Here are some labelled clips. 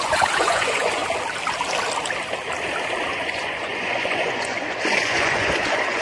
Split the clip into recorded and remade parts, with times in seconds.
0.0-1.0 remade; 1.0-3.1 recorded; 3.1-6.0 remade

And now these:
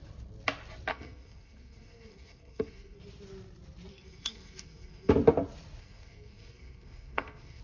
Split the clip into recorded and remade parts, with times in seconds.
0.0-0.9 recorded; 0.9-3.0 remade; 3.0-3.9 recorded; 3.9-5.1 remade; 5.1-5.8 recorded; 5.8-7.6 remade

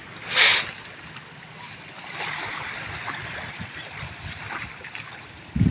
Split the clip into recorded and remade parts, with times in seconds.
0.0-5.7 recorded